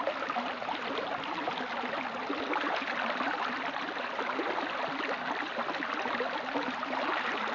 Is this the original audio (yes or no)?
yes